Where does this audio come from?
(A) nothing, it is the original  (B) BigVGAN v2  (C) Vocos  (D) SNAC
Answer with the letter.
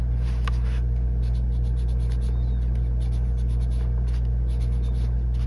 A